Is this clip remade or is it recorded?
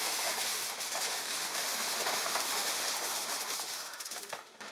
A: remade